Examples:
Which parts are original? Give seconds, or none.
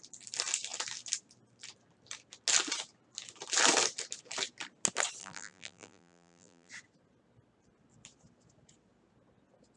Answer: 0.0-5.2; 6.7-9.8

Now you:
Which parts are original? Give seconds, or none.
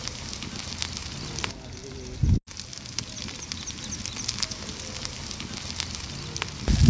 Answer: 0.0-6.9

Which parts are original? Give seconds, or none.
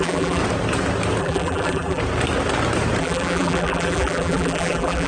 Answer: 0.4-1.2; 2.0-3.0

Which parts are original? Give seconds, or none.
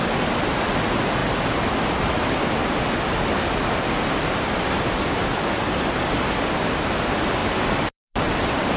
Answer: 0.0-7.4; 8.2-8.8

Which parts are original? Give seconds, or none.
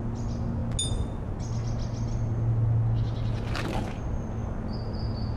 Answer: 0.0-5.4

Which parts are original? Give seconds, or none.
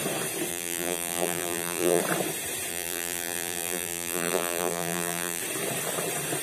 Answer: 0.0-0.5; 2.0-2.7; 5.4-6.4